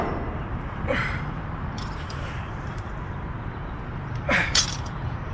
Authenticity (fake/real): fake